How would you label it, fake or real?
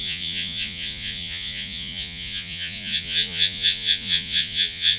fake